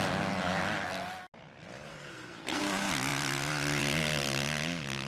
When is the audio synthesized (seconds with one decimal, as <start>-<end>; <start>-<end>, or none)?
1.9-2.6